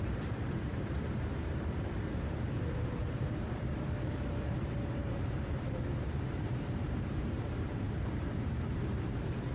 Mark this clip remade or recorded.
remade